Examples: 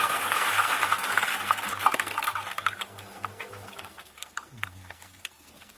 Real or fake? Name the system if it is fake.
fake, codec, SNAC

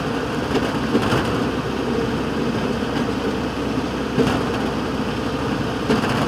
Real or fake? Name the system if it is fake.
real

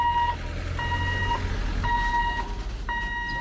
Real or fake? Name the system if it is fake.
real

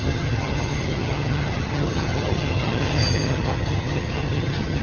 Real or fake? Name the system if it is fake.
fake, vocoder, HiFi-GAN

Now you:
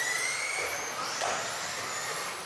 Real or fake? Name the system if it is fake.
real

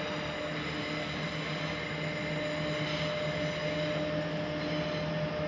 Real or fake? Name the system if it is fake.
real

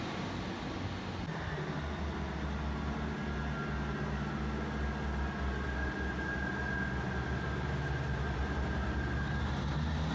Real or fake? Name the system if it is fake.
real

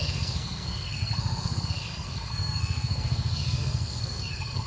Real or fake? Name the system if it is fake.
fake, codec, SNAC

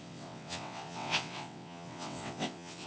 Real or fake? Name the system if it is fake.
fake, vocoder, WaveNeXt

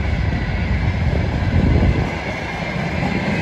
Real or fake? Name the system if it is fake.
real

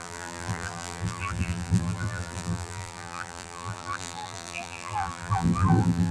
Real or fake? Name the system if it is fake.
fake, vocoder, BigVGAN v2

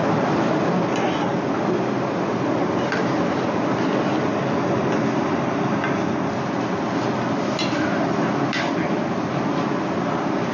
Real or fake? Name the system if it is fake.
real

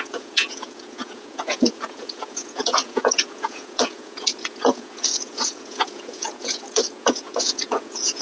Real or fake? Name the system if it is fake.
fake, vocoder, Vocos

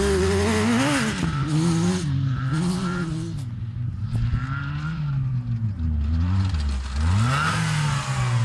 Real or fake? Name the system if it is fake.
real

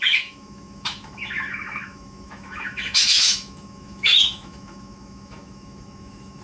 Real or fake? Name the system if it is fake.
fake, autoencoder, DAC-VAE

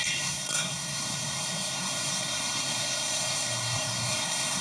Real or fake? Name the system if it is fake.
fake, codec, SNAC